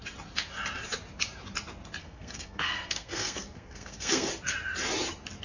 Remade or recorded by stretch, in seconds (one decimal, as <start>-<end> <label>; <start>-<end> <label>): 0.0-2.0 recorded; 2.0-4.3 remade; 4.3-5.4 recorded